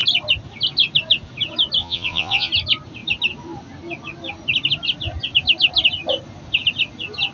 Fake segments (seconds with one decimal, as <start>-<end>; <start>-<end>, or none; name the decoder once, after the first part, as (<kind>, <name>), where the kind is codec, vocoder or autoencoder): 1.8-2.5 (vocoder, Vocos)